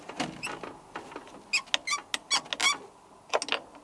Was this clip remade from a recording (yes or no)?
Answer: no